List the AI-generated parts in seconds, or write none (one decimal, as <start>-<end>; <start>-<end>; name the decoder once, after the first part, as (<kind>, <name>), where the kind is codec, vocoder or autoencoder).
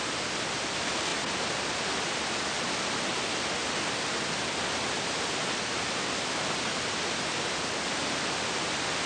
none